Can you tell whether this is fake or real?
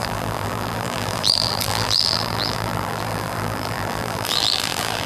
fake